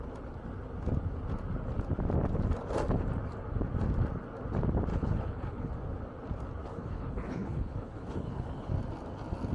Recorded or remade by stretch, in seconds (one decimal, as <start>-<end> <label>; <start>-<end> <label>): 0.0-4.9 recorded; 4.9-5.7 remade; 5.7-6.6 recorded; 6.6-8.7 remade; 8.7-9.5 recorded